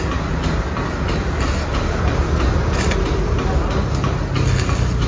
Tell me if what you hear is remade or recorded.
recorded